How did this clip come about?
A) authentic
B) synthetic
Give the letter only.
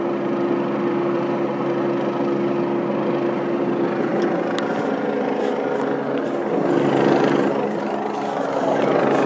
A